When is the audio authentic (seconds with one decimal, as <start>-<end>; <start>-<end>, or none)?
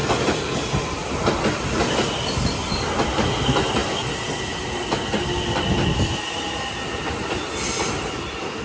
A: 0.0-8.6